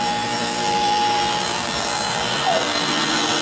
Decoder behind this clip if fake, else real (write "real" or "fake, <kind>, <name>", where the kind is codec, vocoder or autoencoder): fake, vocoder, BigVGAN v2